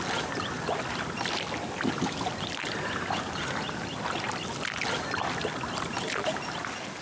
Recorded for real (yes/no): yes